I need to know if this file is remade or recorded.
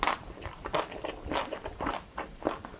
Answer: recorded